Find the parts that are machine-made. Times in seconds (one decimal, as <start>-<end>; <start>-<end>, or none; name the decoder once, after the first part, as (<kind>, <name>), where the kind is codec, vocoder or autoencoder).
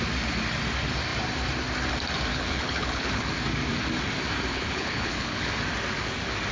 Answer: 2.3-3.3 (codec, HILCodec); 4.5-5.5